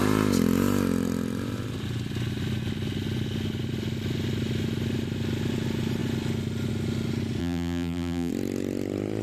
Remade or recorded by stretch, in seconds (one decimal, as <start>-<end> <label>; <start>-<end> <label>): 0.0-7.4 recorded; 7.4-8.3 remade; 8.3-9.2 recorded